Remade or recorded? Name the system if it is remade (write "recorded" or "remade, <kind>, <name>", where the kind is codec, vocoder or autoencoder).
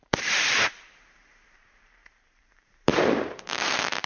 remade, vocoder, BigVGAN v2